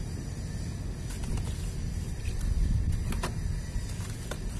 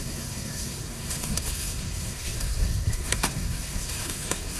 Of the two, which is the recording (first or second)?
first